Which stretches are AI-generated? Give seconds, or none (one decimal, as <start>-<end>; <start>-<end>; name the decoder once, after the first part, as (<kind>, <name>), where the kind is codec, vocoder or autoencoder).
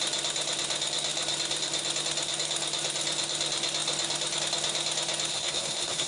5.3-6.1 (codec, SNAC)